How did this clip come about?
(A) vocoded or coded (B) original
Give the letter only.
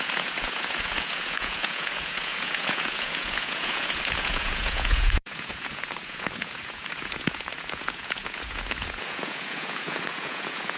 A